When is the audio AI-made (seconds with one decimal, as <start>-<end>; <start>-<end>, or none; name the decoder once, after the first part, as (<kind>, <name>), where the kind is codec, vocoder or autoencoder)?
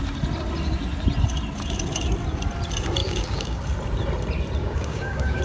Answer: 3.0-3.6 (codec, DAC); 4.6-5.4